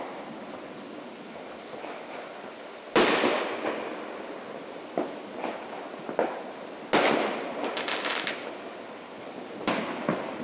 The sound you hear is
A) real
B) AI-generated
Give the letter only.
A